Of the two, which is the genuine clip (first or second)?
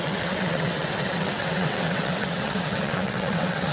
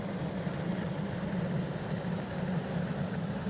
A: second